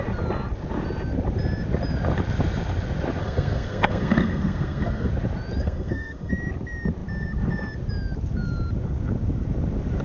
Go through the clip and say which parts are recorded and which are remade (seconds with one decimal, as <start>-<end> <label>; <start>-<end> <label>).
0.0-3.2 recorded; 3.2-5.1 remade; 5.1-5.6 recorded; 5.6-6.3 remade; 6.3-10.0 recorded